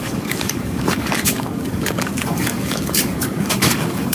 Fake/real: fake